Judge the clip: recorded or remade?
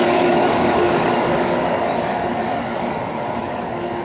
remade